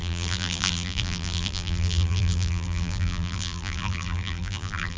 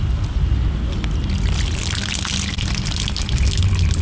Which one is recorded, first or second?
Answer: second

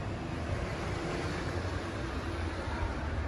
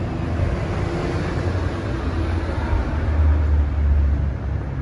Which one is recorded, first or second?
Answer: second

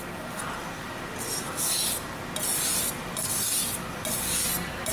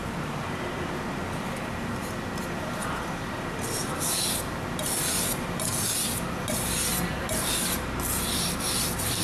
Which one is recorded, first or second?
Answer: first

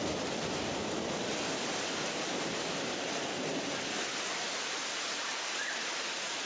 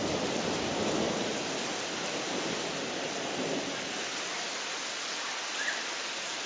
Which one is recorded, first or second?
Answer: second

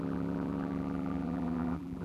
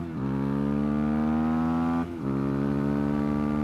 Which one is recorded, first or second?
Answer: second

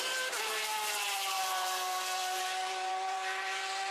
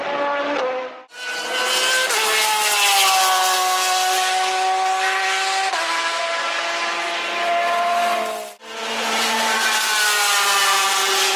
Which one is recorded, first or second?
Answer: second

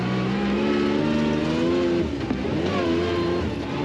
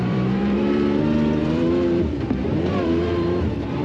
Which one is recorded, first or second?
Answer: first